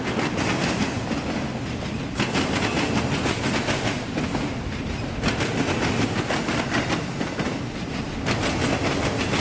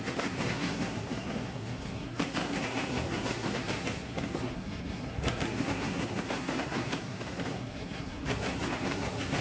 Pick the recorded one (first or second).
first